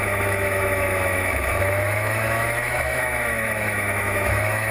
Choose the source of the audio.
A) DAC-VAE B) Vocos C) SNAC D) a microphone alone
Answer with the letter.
A